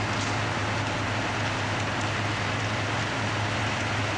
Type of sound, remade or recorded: recorded